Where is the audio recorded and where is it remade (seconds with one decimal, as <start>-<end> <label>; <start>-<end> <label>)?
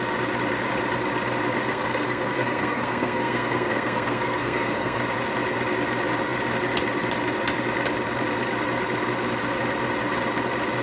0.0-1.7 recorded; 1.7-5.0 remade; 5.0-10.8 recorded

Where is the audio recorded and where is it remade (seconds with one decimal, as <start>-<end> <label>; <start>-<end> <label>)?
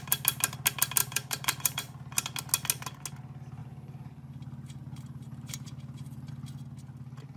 0.0-1.0 recorded; 1.0-1.8 remade; 1.8-3.6 recorded; 3.6-6.3 remade; 6.3-7.4 recorded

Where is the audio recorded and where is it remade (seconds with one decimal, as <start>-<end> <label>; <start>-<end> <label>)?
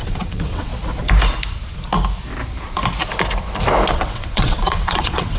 0.0-0.7 remade; 0.7-3.9 recorded; 3.9-5.4 remade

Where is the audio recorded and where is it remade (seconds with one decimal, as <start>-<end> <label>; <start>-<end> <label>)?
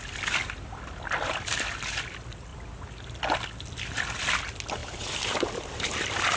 0.0-6.4 recorded